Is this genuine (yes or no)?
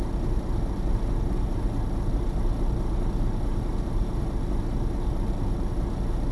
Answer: yes